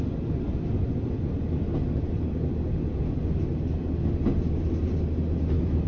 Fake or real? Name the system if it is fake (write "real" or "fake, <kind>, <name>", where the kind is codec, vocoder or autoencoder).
real